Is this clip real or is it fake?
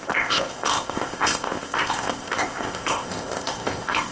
fake